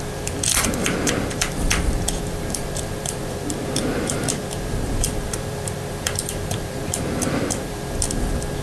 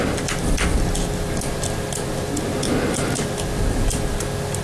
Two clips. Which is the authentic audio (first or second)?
second